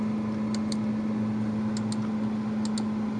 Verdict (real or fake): real